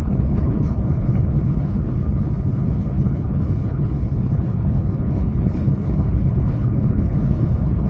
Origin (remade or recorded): remade